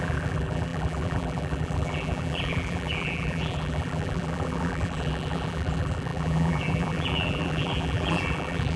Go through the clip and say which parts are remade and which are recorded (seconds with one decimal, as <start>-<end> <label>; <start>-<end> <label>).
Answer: 0.0-8.8 remade